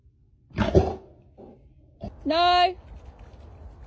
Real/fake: real